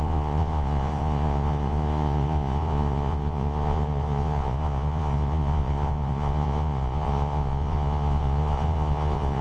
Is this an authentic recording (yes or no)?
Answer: no